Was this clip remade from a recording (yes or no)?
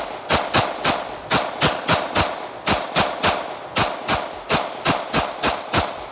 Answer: no